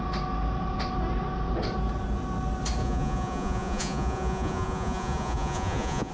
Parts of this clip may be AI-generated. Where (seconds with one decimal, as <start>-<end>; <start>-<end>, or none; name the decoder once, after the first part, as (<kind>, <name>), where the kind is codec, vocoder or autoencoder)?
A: 2.8-6.1 (vocoder, Vocos)